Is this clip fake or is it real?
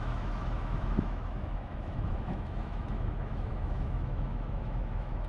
fake